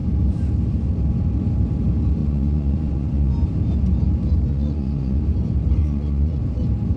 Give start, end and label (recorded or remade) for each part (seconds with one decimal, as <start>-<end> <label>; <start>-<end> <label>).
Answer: 0.0-2.2 recorded; 2.2-3.3 remade; 3.3-4.5 recorded; 4.5-5.2 remade; 5.2-5.8 recorded; 5.8-6.4 remade; 6.4-7.0 recorded